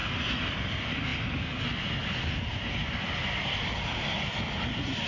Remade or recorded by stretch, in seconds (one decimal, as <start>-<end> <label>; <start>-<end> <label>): 0.0-5.1 recorded